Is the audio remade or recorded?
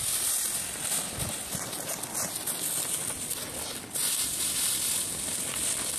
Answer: recorded